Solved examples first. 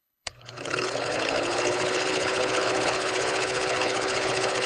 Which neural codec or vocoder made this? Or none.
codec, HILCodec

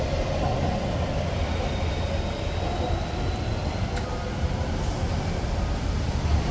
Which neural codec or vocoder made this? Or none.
none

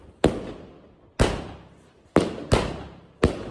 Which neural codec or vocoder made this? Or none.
none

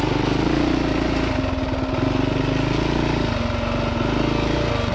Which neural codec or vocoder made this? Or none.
none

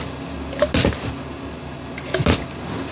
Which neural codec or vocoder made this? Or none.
none